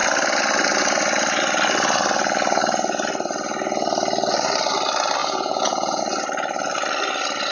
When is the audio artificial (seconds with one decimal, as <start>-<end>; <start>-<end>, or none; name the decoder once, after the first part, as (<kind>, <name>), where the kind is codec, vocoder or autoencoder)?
5.2-6.0 (vocoder, Vocos)